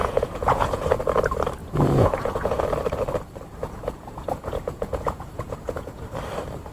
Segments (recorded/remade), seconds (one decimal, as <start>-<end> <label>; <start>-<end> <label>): 0.0-1.0 remade; 1.0-1.6 recorded; 1.6-2.6 remade; 2.6-3.6 recorded; 3.6-6.0 remade; 6.0-6.7 recorded